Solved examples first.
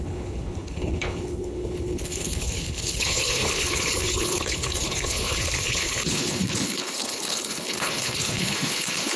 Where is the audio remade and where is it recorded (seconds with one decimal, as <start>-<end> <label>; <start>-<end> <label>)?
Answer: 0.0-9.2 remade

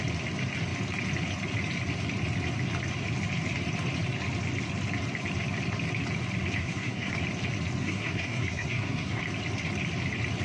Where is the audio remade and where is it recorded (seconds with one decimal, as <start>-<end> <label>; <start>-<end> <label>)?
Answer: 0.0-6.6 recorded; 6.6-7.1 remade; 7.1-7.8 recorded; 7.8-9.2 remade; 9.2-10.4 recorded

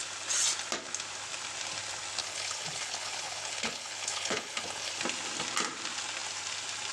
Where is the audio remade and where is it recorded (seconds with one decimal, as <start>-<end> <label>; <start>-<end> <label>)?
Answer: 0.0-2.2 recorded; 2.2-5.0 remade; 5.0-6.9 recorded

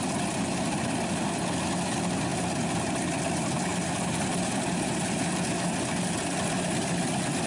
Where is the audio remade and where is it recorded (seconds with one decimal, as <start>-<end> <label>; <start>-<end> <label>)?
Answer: 0.0-7.5 recorded

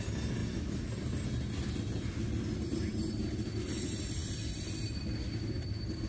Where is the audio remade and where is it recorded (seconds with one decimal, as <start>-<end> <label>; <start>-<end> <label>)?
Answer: 0.0-6.1 recorded

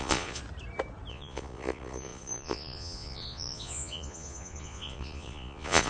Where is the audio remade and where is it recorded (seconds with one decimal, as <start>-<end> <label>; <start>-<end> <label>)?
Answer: 0.0-0.4 remade; 0.4-1.1 recorded; 1.1-5.9 remade

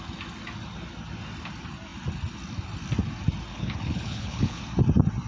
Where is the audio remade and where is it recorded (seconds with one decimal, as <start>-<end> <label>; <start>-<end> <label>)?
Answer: 0.0-3.5 recorded; 3.5-4.6 remade; 4.6-5.3 recorded